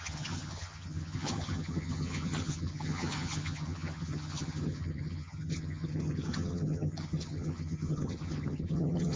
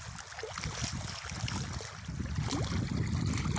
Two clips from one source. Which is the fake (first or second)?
first